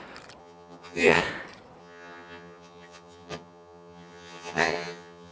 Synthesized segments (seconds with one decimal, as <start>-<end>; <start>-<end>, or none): 0.4-1.2; 1.8-5.3